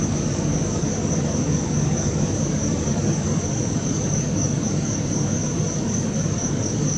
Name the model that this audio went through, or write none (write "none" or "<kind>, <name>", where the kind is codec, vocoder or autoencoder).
codec, DAC